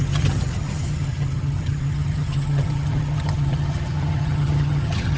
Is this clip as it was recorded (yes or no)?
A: no